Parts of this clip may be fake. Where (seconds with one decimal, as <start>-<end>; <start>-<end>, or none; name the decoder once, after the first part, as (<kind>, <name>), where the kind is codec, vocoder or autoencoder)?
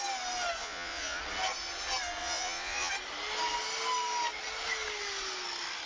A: 0.6-1.2 (vocoder, Vocos); 2.2-2.9